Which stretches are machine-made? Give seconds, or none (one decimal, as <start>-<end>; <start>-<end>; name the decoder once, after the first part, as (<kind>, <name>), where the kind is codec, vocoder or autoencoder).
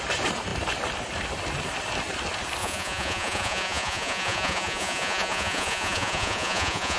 2.6-7.0 (vocoder, Vocos)